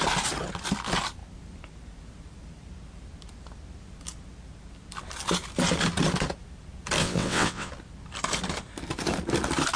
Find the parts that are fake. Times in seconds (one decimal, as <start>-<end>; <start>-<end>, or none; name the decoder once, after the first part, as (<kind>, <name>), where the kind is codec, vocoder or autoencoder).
7.0-7.7 (vocoder, WaveNeXt)